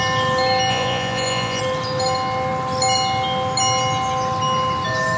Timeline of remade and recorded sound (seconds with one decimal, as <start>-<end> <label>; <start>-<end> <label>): 0.0-0.7 recorded; 0.7-1.6 remade; 1.6-5.2 recorded